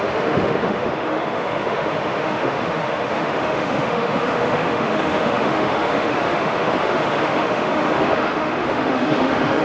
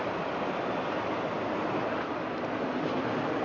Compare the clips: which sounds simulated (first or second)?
first